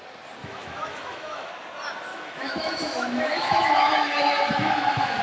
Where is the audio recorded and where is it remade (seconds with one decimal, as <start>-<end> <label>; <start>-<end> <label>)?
0.0-0.4 recorded; 0.4-1.5 remade; 1.5-2.1 recorded; 2.1-5.2 remade